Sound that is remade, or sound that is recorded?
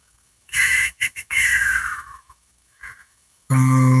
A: remade